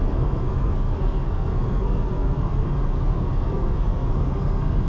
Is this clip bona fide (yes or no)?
no